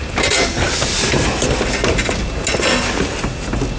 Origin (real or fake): real